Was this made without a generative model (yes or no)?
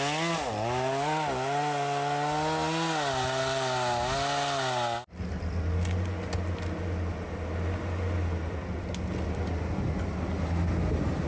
yes